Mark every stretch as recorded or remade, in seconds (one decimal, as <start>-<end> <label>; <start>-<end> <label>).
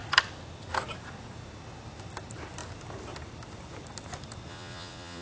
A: 0.0-4.5 recorded; 4.5-5.2 remade